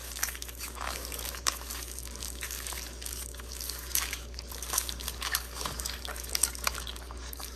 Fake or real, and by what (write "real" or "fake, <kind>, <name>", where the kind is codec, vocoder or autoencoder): fake, codec, DAC